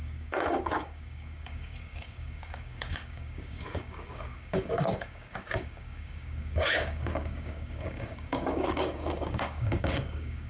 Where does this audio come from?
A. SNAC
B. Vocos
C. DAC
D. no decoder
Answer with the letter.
C